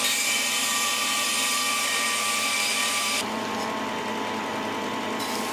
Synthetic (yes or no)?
yes